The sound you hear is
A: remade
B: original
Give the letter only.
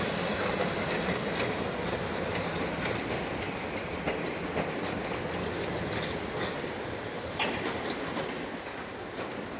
B